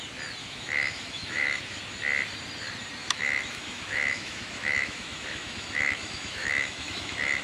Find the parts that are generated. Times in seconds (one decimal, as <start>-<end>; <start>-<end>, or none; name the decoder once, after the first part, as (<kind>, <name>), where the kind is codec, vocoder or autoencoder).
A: 0.4-1.8 (autoencoder, DAC-VAE); 3.0-7.4